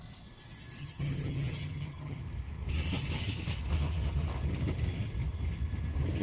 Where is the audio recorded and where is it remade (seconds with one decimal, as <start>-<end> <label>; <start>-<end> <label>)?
0.0-0.8 recorded; 0.8-2.2 remade; 2.2-6.2 recorded